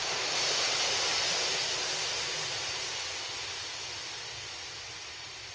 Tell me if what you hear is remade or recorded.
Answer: recorded